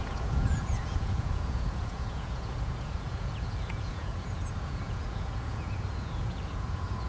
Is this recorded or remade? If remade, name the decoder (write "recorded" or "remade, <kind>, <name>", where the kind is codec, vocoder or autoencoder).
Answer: remade, vocoder, Vocos